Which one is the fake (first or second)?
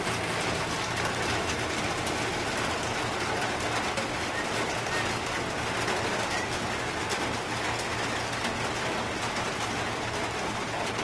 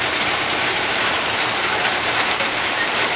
second